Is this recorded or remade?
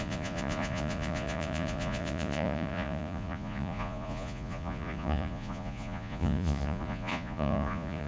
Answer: remade